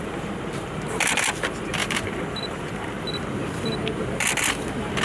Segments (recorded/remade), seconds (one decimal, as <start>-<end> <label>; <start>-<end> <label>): 0.0-1.8 recorded; 1.8-3.2 remade; 3.2-5.0 recorded